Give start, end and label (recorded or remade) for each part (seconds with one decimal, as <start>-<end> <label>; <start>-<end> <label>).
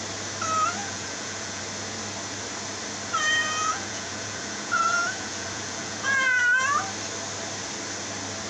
0.0-0.8 recorded; 0.8-1.6 remade; 1.6-3.4 recorded; 3.4-6.4 remade; 6.4-8.5 recorded